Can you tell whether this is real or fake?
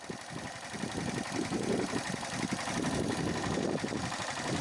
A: real